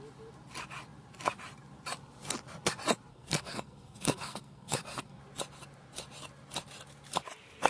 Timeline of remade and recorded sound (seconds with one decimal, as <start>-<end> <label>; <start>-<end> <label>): 0.0-3.1 recorded; 3.1-5.2 remade; 5.2-7.7 recorded